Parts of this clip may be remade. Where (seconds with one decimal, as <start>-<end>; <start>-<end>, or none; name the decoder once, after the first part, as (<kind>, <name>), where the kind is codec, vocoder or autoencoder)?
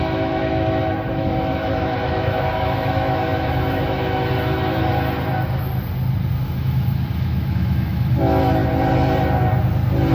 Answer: 0.0-4.9 (autoencoder, DAC-VAE); 6.4-8.6